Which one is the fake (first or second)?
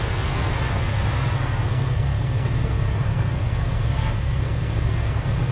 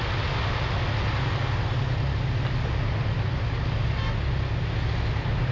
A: first